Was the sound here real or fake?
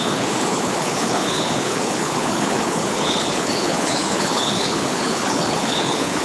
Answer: fake